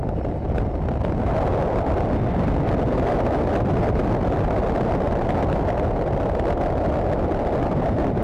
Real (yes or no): yes